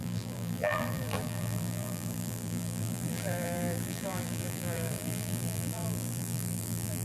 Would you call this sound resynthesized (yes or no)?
yes